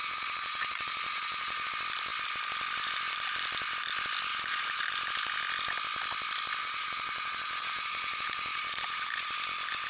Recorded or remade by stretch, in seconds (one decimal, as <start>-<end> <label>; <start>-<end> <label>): 0.0-1.7 remade; 1.7-4.3 recorded; 4.3-4.8 remade; 4.8-6.6 recorded; 6.6-9.3 remade; 9.3-9.9 recorded